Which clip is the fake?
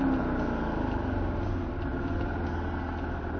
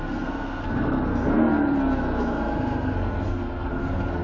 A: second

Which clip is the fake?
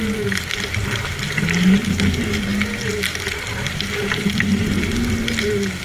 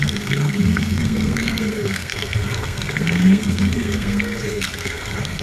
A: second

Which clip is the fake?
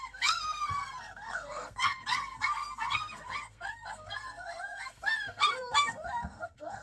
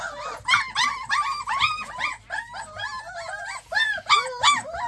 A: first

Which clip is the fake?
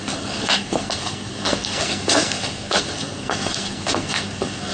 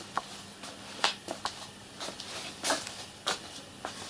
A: first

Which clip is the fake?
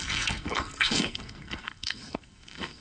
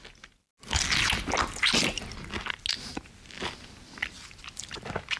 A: first